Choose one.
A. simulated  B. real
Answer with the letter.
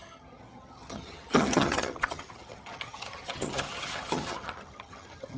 A